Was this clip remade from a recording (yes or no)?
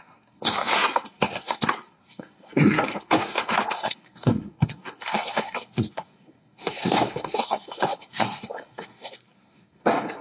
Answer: yes